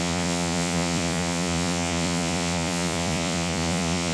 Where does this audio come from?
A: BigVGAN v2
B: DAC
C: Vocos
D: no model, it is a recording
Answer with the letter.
C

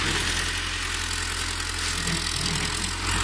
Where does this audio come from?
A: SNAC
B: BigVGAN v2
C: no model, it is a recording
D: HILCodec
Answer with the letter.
C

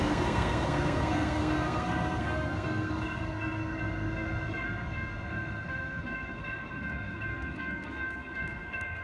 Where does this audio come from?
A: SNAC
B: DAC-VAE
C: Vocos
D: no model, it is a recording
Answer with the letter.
A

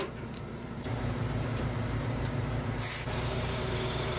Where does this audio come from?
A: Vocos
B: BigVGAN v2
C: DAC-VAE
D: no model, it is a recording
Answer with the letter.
B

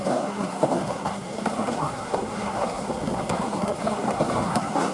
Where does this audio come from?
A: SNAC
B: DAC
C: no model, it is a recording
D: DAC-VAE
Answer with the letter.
A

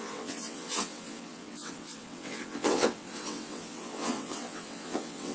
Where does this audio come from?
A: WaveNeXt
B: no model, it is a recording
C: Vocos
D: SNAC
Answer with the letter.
A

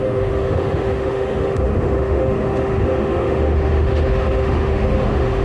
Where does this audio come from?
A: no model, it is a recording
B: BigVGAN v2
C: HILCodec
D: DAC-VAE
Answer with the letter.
D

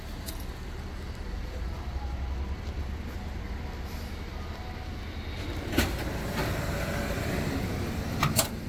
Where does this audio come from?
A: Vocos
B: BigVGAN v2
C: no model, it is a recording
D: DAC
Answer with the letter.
C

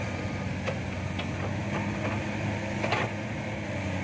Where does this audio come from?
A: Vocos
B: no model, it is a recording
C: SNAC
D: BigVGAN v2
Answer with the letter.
B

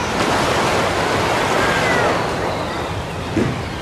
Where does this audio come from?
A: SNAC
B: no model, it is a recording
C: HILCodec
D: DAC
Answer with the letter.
B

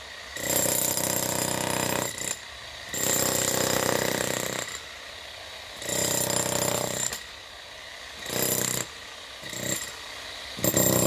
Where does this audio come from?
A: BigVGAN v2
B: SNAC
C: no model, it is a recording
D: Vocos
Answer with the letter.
C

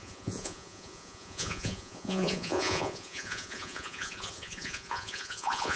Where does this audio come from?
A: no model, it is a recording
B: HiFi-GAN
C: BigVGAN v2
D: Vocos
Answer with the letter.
D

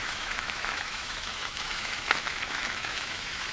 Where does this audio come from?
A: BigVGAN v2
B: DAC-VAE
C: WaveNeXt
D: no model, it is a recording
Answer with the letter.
B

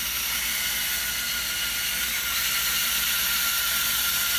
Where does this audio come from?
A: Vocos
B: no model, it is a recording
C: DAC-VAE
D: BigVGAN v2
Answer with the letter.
B